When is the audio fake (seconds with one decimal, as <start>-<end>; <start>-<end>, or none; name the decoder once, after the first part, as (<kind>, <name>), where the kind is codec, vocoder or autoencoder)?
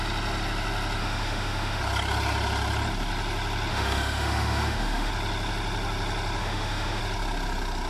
1.0-1.8 (autoencoder, DAC-VAE); 3.7-5.1; 6.4-7.0